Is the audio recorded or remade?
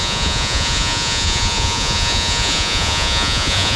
remade